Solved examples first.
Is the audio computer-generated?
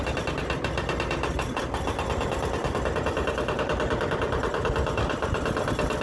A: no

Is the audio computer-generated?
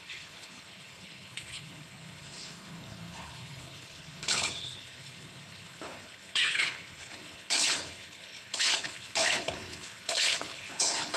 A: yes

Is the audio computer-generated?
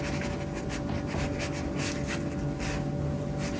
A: no